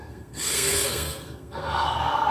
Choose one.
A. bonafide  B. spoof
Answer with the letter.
B